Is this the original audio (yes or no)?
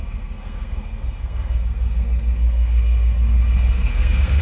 no